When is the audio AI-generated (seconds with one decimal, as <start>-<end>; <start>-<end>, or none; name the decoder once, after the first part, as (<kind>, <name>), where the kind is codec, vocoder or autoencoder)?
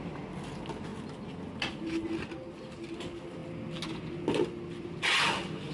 none